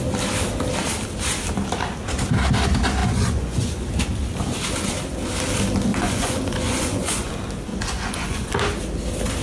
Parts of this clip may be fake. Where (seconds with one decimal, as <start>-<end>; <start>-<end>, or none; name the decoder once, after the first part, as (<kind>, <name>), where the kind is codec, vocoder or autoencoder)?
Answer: 3.0-3.9 (vocoder, Vocos); 5.9-7.3; 7.7-8.5